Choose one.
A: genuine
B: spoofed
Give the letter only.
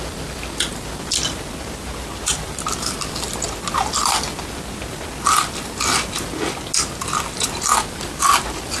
A